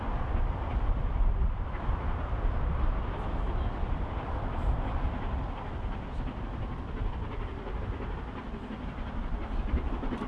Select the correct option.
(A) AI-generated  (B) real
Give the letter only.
B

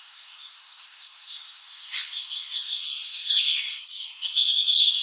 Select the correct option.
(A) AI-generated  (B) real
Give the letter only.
A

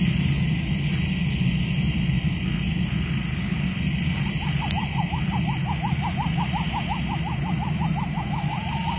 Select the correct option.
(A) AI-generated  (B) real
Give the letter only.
B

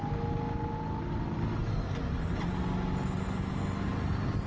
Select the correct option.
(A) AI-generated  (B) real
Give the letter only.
B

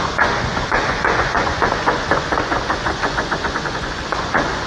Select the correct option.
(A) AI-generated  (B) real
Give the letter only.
A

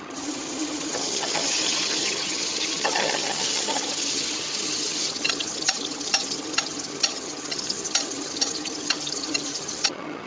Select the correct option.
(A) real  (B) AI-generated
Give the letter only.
B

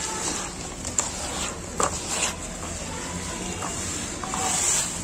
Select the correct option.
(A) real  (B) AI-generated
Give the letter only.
A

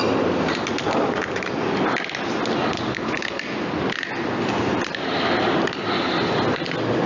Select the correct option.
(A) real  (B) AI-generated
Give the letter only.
A